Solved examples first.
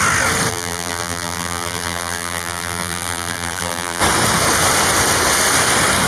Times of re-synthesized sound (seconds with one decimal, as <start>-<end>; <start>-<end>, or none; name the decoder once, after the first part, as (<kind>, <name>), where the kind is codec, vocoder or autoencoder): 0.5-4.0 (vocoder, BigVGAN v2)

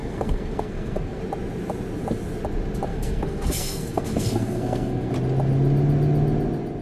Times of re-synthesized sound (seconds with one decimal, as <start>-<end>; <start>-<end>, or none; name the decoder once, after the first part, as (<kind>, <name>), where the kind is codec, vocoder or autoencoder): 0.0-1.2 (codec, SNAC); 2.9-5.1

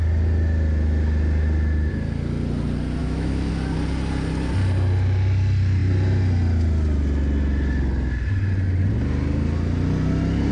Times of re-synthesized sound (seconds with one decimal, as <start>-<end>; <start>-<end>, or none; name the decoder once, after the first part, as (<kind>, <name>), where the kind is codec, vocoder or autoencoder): 3.0-3.5 (autoencoder, DAC-VAE)

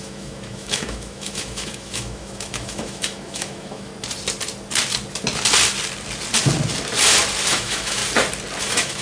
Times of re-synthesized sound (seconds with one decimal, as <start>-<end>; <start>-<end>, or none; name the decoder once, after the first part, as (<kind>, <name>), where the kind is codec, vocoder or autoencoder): 0.0-3.9 (autoencoder, DAC-VAE); 7.5-8.0; 8.6-9.0